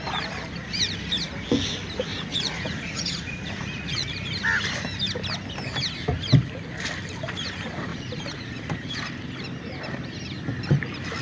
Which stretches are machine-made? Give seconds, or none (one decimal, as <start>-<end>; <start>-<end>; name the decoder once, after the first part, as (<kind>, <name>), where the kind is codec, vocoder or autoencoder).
2.1-4.1 (vocoder, Vocos); 7.9-9.0